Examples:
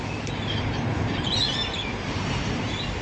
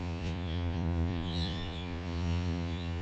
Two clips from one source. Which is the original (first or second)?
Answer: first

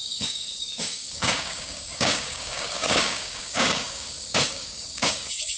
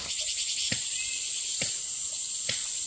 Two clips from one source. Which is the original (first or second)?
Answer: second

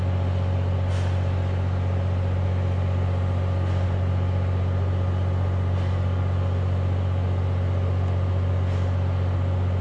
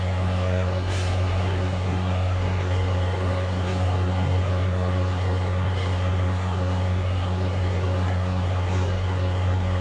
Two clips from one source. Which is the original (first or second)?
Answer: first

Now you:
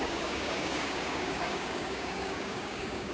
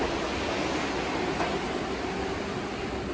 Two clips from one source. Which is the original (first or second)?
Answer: second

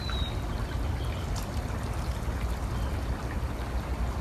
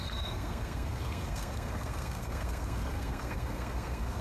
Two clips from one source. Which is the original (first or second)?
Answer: first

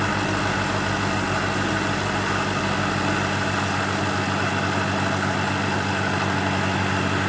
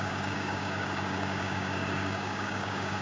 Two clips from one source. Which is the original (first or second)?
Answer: first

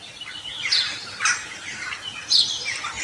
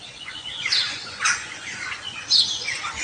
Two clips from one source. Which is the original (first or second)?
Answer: first